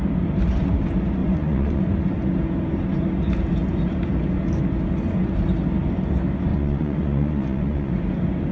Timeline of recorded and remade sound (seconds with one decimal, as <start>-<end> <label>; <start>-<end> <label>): 0.0-1.2 recorded; 1.2-1.8 remade; 1.8-6.5 recorded; 6.5-7.9 remade; 7.9-8.5 recorded